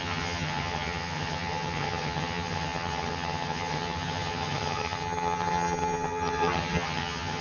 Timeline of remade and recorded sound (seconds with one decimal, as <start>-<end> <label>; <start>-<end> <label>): 0.0-7.4 remade